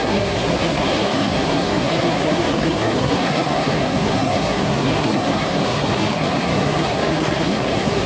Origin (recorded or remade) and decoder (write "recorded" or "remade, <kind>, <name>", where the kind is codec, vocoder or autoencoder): remade, codec, SNAC